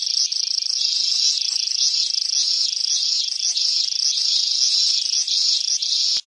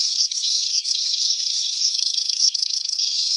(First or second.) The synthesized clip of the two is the second